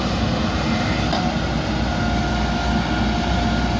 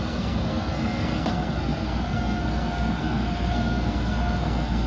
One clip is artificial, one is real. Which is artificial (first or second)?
second